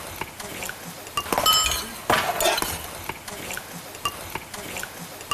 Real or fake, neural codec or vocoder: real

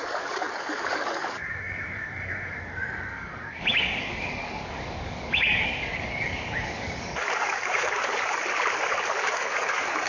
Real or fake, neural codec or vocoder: fake, codec, DAC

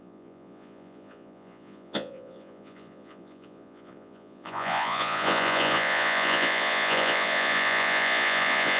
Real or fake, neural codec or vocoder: fake, vocoder, Vocos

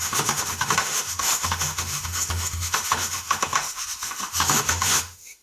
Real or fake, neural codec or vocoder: fake, autoencoder, DAC-VAE